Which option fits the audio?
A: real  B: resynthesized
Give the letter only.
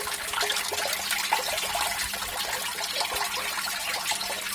A